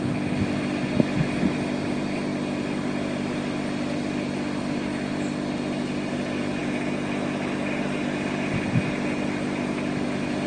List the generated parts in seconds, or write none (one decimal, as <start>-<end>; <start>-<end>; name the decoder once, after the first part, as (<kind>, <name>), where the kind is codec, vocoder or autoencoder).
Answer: 5.1-6.1 (vocoder, BigVGAN v2); 6.6-8.5